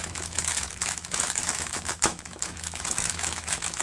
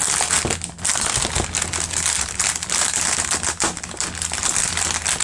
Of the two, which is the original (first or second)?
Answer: second